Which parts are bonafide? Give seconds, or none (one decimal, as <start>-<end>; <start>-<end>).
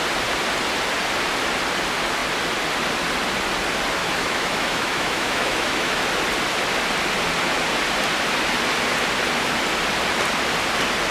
0.0-4.0; 6.0-11.1